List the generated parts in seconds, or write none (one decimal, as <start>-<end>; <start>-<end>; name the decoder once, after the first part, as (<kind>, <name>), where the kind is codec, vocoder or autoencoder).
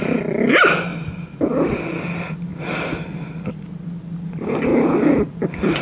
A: 0.0-2.5 (vocoder, BigVGAN v2); 4.0-4.7; 5.3-5.8